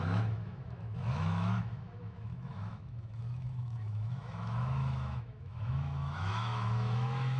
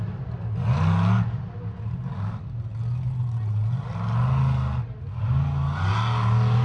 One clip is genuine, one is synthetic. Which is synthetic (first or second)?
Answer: first